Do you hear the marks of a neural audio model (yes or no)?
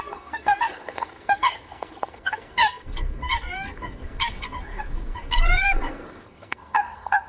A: yes